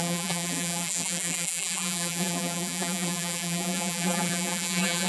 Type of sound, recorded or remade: remade